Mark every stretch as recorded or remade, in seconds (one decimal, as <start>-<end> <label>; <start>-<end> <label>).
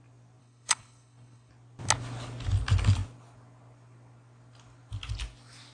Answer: 0.0-0.4 recorded; 0.4-1.5 remade; 1.5-5.7 recorded